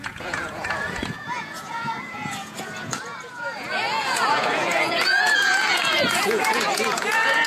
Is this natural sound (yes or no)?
no